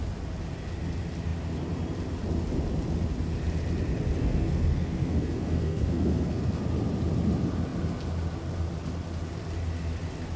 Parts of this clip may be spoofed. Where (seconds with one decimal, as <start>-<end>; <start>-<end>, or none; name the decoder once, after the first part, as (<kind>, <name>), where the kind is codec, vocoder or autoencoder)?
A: 4.2-6.6 (codec, SNAC)